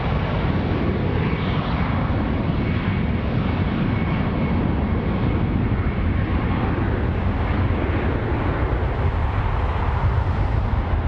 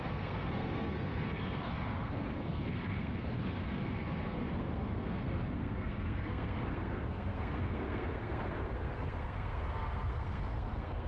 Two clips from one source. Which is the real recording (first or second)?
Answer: first